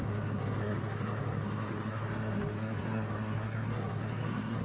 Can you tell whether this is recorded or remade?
remade